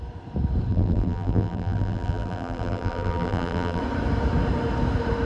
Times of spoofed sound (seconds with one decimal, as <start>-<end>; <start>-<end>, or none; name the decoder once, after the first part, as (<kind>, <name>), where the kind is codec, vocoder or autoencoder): 0.7-3.8 (vocoder, BigVGAN v2)